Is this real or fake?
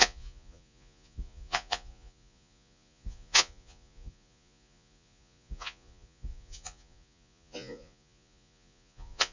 fake